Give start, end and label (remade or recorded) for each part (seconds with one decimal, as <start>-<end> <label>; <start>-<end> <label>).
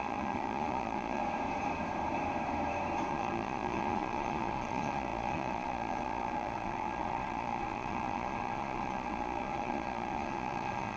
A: 0.0-1.2 remade; 1.2-3.1 recorded; 3.1-11.0 remade